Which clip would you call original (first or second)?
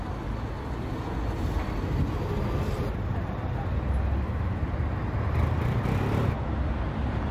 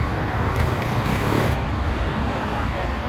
first